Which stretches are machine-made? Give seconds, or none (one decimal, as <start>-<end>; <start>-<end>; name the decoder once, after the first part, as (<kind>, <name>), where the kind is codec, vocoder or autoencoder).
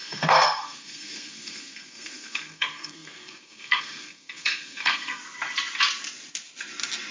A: 0.0-5.2 (codec, SNAC)